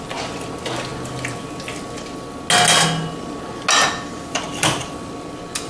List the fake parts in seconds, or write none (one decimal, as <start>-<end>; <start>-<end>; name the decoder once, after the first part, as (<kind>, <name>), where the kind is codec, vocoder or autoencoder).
none

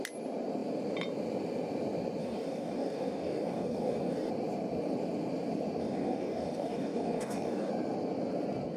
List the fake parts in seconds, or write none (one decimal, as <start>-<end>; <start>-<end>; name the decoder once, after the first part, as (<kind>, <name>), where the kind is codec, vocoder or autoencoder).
2.2-4.3 (codec, DAC); 5.8-7.7

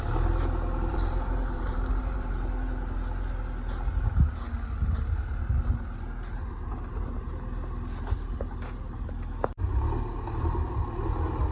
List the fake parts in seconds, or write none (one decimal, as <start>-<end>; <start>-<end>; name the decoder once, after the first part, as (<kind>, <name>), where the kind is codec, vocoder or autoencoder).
0.9-2.3 (vocoder, BigVGAN v2)

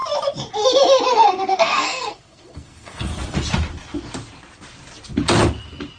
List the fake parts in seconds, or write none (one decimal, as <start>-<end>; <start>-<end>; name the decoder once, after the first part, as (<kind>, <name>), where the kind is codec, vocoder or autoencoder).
1.1-3.1 (codec, SNAC)

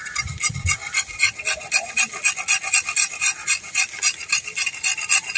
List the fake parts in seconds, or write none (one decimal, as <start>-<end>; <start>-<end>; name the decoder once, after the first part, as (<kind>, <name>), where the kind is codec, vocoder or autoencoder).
none

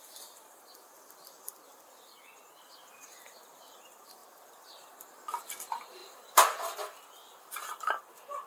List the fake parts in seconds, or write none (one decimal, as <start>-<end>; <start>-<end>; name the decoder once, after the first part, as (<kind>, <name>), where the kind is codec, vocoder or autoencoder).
6.0-8.0 (vocoder, BigVGAN v2)

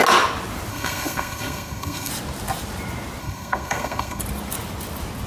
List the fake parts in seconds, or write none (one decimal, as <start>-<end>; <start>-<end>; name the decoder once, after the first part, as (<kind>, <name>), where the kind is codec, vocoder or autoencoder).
0.7-2.1 (codec, SNAC); 3.2-4.2